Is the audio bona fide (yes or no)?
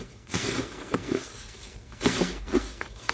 no